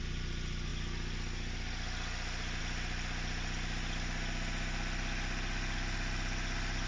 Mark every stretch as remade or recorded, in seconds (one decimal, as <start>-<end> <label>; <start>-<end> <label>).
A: 0.0-6.9 recorded